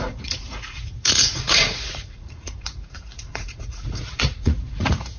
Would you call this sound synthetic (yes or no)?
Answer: yes